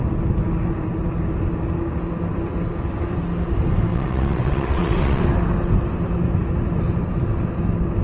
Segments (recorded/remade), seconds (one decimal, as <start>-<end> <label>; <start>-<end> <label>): 0.0-3.9 recorded; 3.9-5.2 remade; 5.2-8.0 recorded